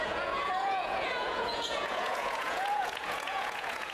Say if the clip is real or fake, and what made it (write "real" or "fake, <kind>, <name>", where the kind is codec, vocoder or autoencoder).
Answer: fake, vocoder, Vocos